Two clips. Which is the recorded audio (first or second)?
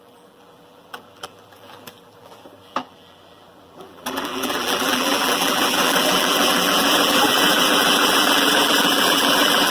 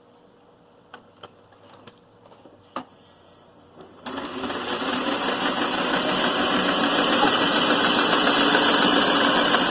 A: second